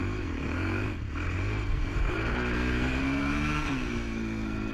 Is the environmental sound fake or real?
fake